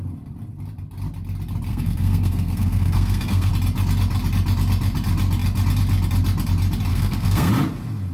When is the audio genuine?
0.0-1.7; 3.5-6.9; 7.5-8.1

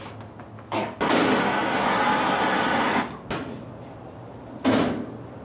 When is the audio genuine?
0.0-5.4

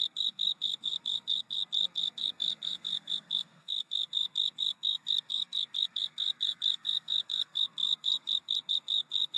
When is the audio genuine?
none

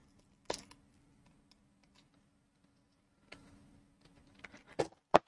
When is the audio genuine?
0.0-5.3

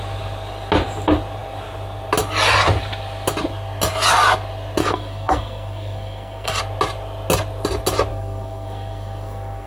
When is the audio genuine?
0.0-4.8; 6.6-8.1

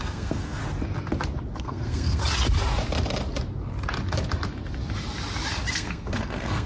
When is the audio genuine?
0.6-1.6; 2.2-5.7

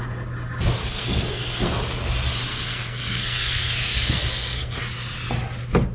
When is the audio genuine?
0.0-0.8; 1.7-2.5; 4.8-5.9